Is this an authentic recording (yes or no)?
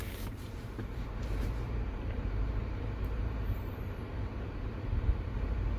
no